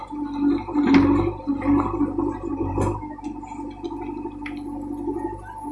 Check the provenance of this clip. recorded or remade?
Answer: recorded